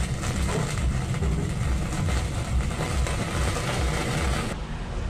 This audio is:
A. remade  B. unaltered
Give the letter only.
B